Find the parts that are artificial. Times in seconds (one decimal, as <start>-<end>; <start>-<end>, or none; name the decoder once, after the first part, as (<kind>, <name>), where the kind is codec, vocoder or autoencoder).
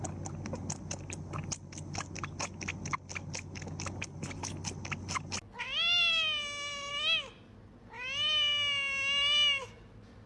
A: none